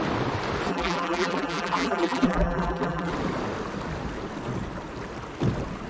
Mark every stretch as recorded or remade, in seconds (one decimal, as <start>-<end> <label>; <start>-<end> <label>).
0.0-0.7 recorded; 0.7-3.1 remade; 3.1-5.9 recorded